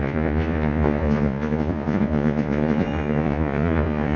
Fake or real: fake